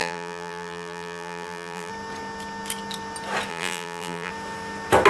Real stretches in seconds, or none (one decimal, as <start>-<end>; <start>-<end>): 1.9-3.5; 4.3-5.1

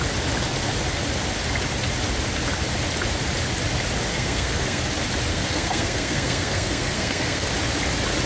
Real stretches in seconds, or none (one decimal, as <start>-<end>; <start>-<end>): 0.0-4.1; 4.8-5.3; 7.5-8.3

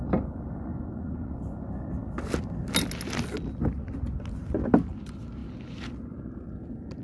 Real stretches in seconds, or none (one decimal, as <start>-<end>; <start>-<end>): 0.0-0.7; 1.4-7.0

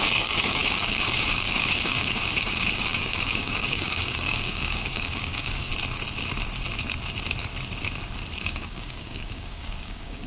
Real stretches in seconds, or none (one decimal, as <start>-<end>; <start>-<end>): 5.7-8.4

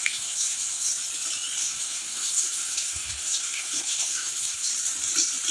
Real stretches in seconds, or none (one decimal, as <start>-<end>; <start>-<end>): 0.9-1.6; 4.7-5.5

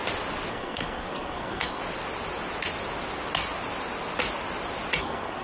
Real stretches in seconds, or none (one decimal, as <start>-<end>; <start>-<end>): 0.0-0.5; 1.8-5.0

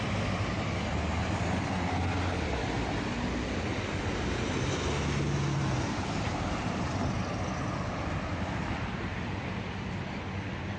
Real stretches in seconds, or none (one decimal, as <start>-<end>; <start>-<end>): 0.0-10.8

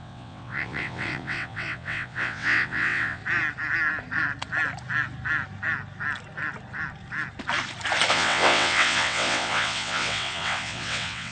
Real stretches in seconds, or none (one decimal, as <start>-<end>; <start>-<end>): 3.2-8.1